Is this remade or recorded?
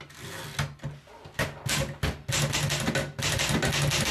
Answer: recorded